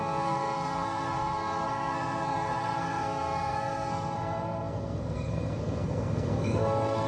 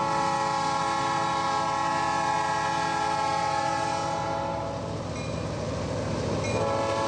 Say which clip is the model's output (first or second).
first